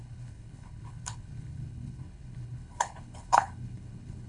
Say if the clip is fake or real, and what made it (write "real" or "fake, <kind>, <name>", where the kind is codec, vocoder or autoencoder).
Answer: fake, codec, HILCodec